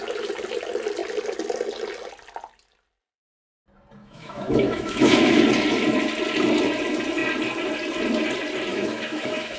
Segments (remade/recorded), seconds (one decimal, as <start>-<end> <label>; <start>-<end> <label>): 0.0-4.0 recorded; 4.0-5.4 remade; 5.4-8.7 recorded; 8.7-9.6 remade